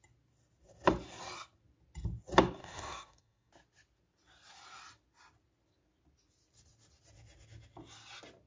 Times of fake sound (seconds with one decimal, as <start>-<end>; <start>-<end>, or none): 2.6-3.5